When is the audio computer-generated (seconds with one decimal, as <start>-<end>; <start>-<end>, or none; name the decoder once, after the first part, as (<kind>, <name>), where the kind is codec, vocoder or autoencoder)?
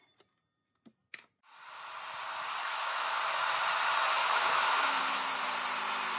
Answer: 2.6-3.2 (autoencoder, DAC-VAE); 4.2-5.3